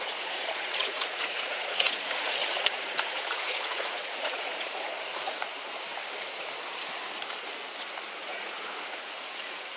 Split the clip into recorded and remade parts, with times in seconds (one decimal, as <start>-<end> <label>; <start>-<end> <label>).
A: 0.0-5.5 remade; 5.5-8.2 recorded; 8.2-9.8 remade